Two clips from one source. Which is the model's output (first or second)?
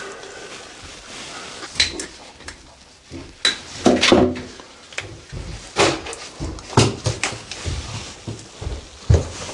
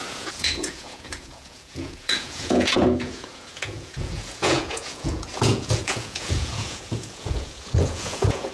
second